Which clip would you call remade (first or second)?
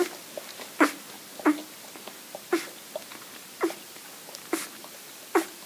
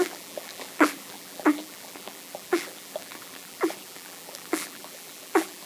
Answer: second